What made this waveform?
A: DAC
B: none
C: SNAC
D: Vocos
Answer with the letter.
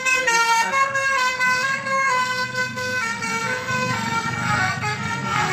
C